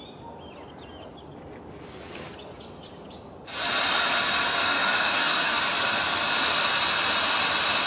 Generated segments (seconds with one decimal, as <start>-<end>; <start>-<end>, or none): 4.5-5.6